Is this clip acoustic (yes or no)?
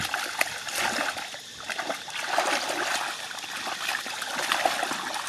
yes